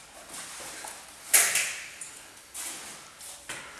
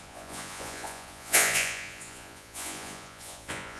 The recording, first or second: first